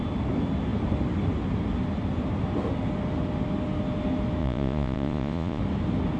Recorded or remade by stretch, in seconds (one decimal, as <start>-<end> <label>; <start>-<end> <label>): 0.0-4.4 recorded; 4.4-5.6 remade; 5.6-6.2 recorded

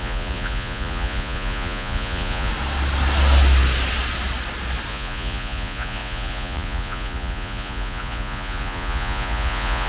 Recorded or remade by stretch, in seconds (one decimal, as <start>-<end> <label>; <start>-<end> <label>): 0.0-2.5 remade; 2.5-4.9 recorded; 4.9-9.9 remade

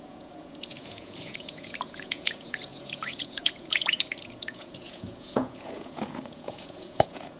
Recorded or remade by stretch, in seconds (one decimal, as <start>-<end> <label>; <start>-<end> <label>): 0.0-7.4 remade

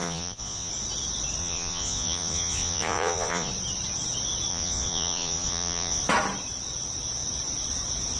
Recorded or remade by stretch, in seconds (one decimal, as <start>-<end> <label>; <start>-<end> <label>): 0.0-0.7 remade; 0.7-1.4 recorded; 1.4-3.5 remade; 3.5-4.5 recorded; 4.5-6.0 remade; 6.0-8.2 recorded